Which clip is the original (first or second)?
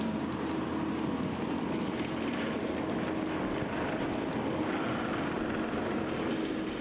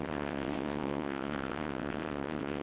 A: first